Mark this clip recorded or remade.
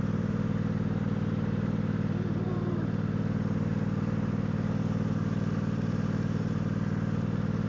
remade